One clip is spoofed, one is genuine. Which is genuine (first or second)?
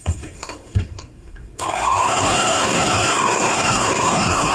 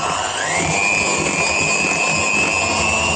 second